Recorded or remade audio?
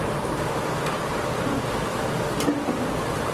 recorded